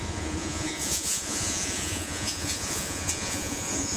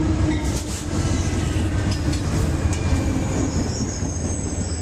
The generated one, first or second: first